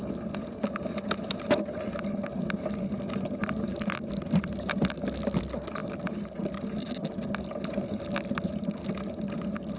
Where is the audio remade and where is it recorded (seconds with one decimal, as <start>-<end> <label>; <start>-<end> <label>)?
0.0-9.8 recorded

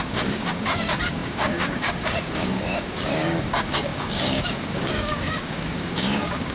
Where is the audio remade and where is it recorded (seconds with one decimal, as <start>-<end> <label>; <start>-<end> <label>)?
0.0-6.5 remade

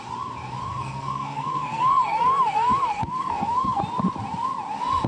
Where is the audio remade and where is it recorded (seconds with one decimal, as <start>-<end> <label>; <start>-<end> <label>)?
0.0-0.7 recorded; 0.7-3.8 remade; 3.8-5.1 recorded

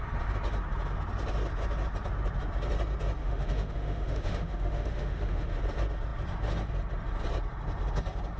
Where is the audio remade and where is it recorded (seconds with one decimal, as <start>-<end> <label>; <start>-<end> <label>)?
0.0-3.2 recorded; 3.2-5.5 remade; 5.5-8.4 recorded

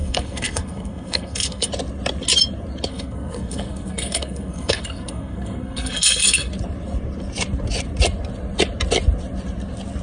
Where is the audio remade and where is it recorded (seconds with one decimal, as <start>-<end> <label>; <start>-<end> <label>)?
0.0-1.7 remade; 1.7-2.9 recorded; 2.9-6.5 remade; 6.5-10.0 recorded